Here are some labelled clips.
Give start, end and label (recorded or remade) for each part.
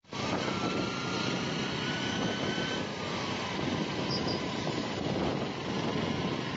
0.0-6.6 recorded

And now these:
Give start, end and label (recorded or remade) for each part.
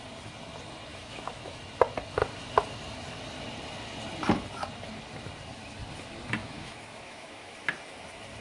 0.0-0.9 recorded; 0.9-1.6 remade; 1.6-6.4 recorded; 6.4-7.6 remade; 7.6-8.4 recorded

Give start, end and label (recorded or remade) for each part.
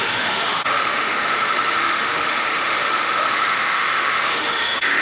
0.0-5.0 remade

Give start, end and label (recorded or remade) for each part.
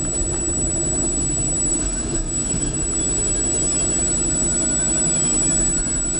0.0-1.7 recorded; 1.7-2.8 remade; 2.8-6.2 recorded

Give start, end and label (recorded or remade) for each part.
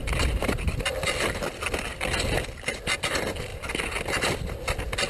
0.0-5.1 recorded